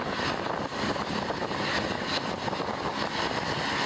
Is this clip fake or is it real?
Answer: real